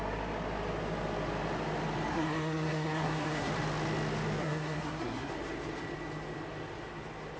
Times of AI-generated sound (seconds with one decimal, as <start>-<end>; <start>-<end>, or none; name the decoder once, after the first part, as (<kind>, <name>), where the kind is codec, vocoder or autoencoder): 2.1-3.5 (codec, SNAC); 4.4-5.3

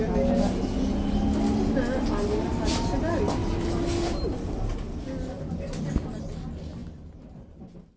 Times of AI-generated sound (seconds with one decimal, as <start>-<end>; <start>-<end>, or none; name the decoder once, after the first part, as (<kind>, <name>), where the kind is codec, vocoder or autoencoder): none